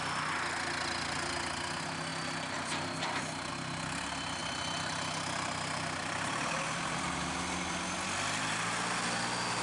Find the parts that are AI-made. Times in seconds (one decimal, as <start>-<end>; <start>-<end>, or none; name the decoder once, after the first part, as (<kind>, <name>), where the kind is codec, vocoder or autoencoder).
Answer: 2.1-3.5 (vocoder, BigVGAN v2); 4.4-7.4